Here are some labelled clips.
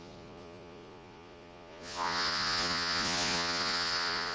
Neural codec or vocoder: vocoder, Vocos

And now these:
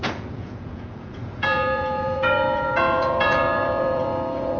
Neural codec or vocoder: vocoder, Vocos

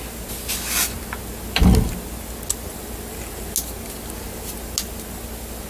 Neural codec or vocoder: none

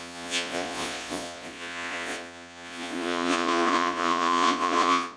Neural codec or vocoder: vocoder, Vocos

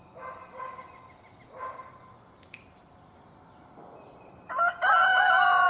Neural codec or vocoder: none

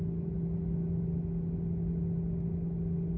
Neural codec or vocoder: none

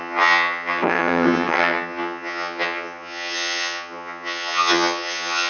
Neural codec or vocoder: vocoder, HiFi-GAN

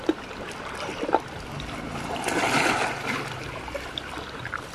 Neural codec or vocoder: none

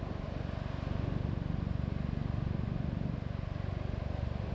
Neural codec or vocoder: none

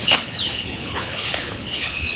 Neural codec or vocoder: codec, HILCodec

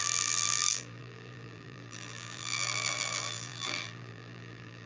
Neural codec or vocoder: vocoder, BigVGAN v2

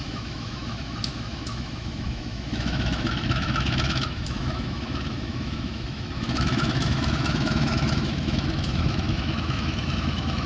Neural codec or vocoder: autoencoder, DAC-VAE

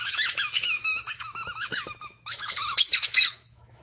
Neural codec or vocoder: autoencoder, DAC-VAE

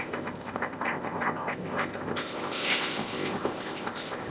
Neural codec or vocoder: codec, ZipCodec